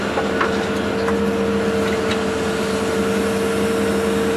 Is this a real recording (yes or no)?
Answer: yes